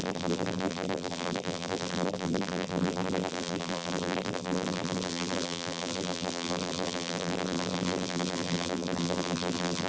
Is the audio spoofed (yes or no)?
yes